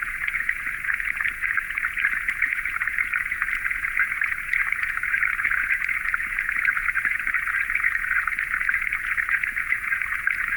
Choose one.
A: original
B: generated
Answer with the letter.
B